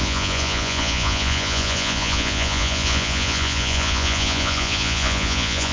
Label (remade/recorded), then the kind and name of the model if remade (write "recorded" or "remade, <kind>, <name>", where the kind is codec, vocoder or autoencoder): remade, vocoder, Vocos